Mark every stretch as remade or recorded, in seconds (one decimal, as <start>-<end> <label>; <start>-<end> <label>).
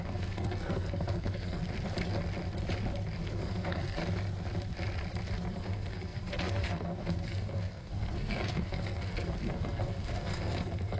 0.0-1.6 remade; 1.6-3.2 recorded; 3.2-4.0 remade; 4.0-5.5 recorded; 5.5-11.0 remade